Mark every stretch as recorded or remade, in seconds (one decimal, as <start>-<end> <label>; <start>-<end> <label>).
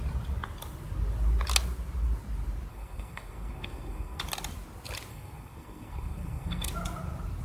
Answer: 0.0-2.7 recorded; 2.7-4.2 remade; 4.2-5.1 recorded; 5.1-6.7 remade; 6.7-7.4 recorded